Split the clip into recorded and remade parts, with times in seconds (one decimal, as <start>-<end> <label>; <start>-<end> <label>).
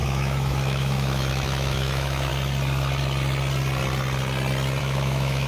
0.0-2.3 remade; 2.3-4.8 recorded; 4.8-5.5 remade